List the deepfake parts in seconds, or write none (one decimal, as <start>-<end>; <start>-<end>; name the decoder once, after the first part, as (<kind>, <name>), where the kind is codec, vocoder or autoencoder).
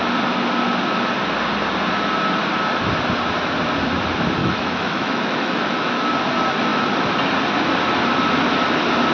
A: 4.4-6.1 (autoencoder, DAC-VAE)